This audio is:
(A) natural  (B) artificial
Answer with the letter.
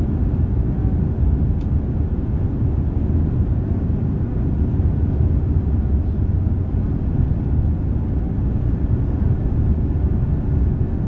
A